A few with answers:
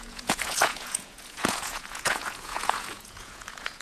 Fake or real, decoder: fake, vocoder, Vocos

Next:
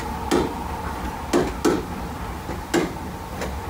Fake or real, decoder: real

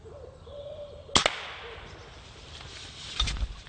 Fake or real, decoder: real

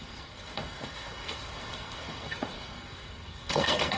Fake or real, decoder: fake, codec, SNAC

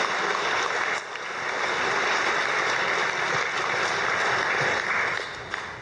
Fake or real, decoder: real